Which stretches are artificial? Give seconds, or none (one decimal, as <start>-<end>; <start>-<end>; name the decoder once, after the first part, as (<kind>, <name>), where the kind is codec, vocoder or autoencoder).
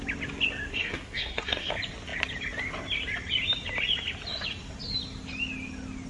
0.7-1.7 (codec, SNAC)